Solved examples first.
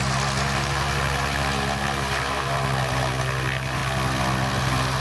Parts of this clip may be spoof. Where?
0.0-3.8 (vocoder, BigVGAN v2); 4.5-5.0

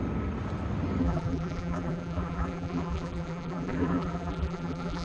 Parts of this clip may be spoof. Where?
1.0-5.0 (vocoder, BigVGAN v2)